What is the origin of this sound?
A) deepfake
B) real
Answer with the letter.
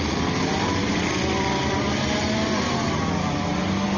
B